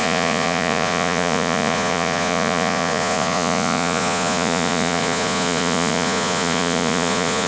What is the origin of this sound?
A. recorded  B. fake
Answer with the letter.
B